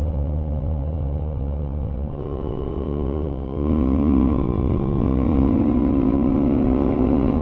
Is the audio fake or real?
fake